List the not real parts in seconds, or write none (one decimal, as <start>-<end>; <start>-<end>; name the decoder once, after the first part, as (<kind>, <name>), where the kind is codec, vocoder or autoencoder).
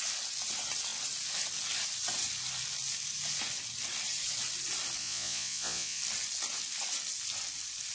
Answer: 5.0-6.0 (vocoder, Vocos)